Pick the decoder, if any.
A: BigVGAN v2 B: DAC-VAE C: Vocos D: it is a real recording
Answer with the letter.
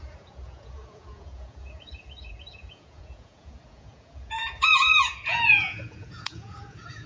C